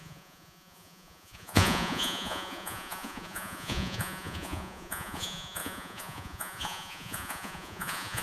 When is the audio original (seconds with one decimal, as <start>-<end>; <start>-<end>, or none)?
none